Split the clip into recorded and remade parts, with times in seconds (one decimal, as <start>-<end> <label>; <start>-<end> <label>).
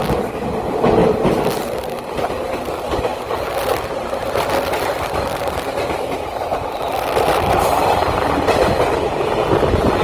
0.0-10.0 recorded